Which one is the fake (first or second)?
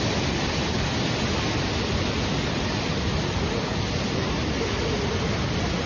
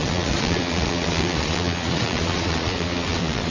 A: second